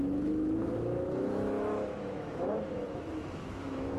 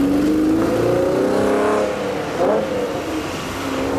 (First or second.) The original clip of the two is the second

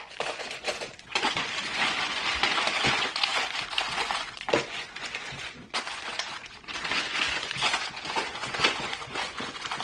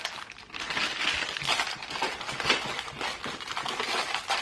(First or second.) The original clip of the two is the second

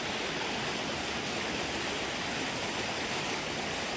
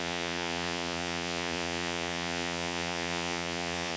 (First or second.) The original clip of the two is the first